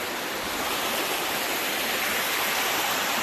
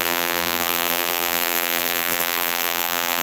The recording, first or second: first